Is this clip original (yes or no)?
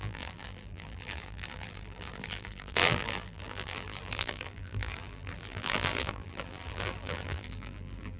no